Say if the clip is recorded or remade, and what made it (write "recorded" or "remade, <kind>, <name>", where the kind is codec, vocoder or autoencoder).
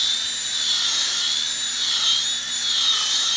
recorded